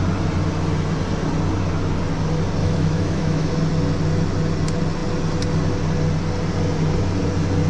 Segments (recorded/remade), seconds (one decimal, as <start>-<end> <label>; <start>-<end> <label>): 0.0-2.6 recorded; 2.6-3.5 remade; 3.5-7.7 recorded